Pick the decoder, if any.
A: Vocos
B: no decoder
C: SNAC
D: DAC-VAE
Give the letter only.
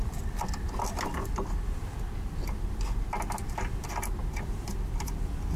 B